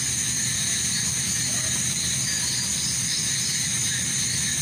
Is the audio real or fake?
real